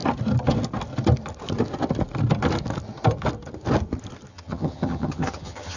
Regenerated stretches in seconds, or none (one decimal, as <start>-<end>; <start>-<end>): 4.3-5.8